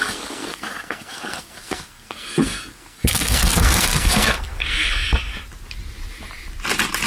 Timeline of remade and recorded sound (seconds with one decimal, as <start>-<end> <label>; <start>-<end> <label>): 0.0-5.3 remade; 5.3-7.1 recorded